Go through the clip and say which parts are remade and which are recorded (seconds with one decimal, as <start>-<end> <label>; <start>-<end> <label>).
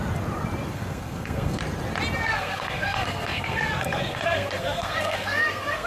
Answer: 0.0-0.7 recorded; 0.7-1.6 remade; 1.6-2.2 recorded; 2.2-5.9 remade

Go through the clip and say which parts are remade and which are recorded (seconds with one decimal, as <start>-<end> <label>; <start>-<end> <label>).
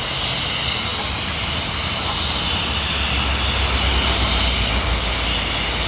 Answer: 0.0-5.9 recorded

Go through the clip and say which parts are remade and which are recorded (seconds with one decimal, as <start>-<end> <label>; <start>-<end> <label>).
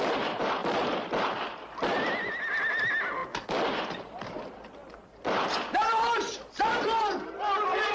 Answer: 0.0-3.2 remade; 3.2-4.3 recorded; 4.3-7.9 remade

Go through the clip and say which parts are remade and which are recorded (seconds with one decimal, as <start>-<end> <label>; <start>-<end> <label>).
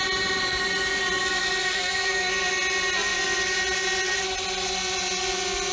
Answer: 0.0-1.6 recorded; 1.6-2.3 remade; 2.3-5.7 recorded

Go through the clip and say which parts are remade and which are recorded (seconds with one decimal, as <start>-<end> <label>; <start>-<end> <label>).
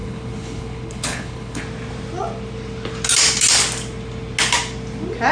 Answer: 0.0-1.6 remade; 1.6-5.3 recorded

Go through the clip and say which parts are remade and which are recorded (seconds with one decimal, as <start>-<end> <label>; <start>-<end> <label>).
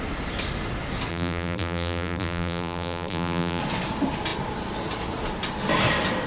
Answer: 0.0-1.1 recorded; 1.1-3.6 remade; 3.6-6.3 recorded